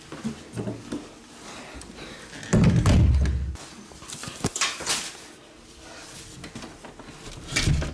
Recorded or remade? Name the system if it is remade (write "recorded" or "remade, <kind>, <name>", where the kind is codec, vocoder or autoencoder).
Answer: recorded